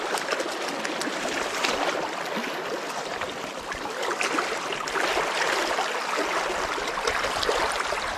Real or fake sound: real